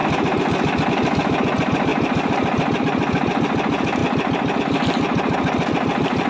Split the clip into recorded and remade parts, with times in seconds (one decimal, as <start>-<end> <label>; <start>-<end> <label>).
0.0-6.3 recorded